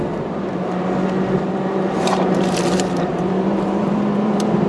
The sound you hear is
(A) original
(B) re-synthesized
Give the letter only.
B